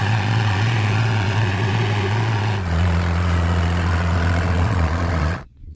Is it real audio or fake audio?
fake